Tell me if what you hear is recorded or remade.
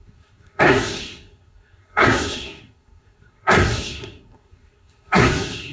remade